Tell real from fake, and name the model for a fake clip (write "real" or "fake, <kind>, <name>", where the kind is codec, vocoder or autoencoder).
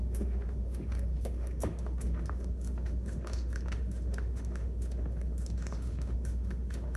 fake, autoencoder, DAC-VAE